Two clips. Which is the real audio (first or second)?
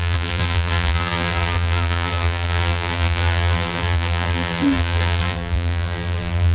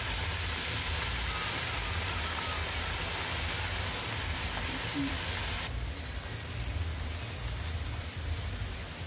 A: second